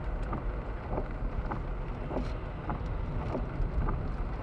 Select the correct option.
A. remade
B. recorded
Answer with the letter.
B